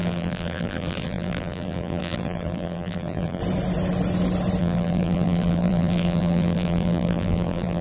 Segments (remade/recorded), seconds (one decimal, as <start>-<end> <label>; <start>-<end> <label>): 0.0-3.4 remade; 3.4-4.6 recorded; 4.6-7.8 remade